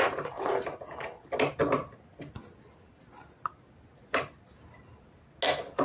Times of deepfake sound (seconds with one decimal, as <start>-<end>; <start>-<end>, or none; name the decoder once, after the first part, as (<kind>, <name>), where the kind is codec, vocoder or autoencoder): none